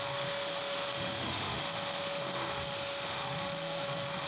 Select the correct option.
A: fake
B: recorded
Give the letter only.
A